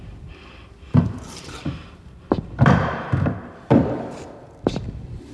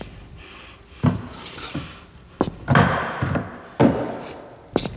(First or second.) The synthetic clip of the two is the first